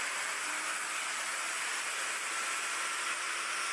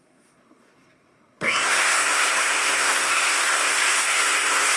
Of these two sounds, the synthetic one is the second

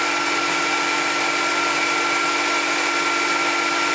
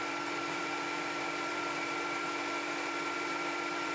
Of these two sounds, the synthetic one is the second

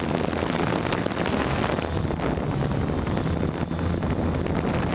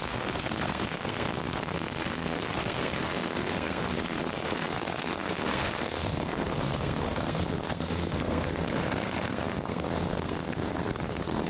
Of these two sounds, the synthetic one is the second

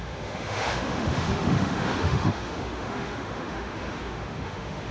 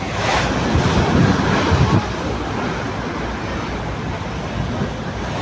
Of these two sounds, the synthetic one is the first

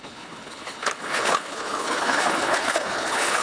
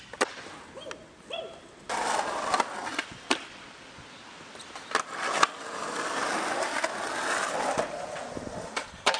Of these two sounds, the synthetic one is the first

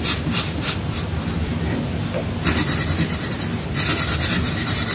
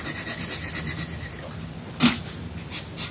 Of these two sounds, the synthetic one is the first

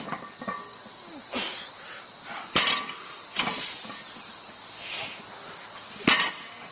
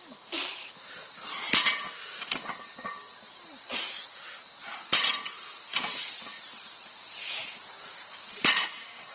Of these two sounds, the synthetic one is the second